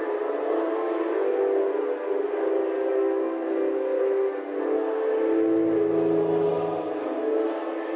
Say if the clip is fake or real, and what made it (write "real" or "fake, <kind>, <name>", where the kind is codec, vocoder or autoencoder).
real